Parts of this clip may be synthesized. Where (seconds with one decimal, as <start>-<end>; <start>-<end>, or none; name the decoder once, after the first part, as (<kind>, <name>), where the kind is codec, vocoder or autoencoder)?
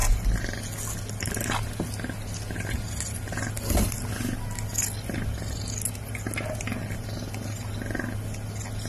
none